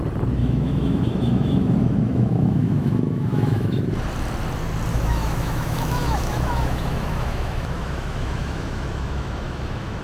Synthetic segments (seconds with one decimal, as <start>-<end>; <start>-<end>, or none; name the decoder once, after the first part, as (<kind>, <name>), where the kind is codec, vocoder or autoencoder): 0.4-3.9 (autoencoder, DAC-VAE); 4.9-10.0